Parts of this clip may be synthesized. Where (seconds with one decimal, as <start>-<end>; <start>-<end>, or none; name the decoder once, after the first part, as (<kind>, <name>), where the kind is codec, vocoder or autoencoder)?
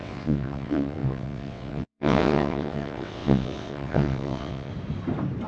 0.0-4.7 (vocoder, WaveNeXt)